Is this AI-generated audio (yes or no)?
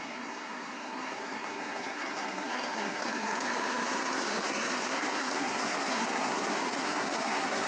yes